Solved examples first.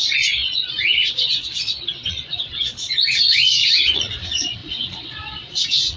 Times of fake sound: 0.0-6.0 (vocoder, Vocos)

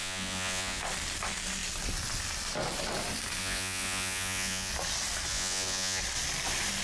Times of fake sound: 0.0-0.8 (vocoder, Vocos); 3.4-4.7; 5.3-6.0

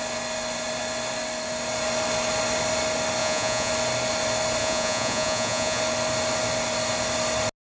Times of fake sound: 3.2-3.7 (vocoder, Vocos); 4.6-5.8

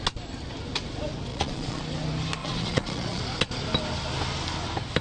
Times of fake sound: 1.3-1.8 (vocoder, Vocos); 2.4-3.2

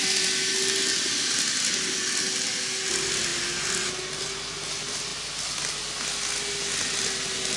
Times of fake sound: none